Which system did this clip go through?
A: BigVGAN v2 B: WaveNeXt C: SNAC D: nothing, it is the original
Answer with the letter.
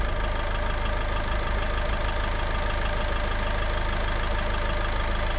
D